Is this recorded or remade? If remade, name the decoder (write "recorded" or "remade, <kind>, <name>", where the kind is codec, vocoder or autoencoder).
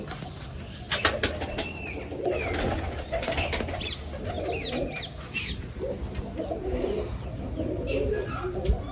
recorded